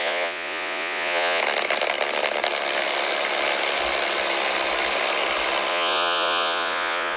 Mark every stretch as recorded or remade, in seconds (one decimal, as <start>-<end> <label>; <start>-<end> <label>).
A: 0.0-1.4 remade; 1.4-5.7 recorded; 5.7-7.2 remade